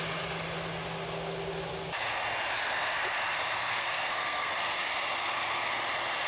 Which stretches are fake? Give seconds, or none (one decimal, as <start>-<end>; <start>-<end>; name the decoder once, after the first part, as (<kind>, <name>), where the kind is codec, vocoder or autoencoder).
3.8-4.5 (codec, SNAC)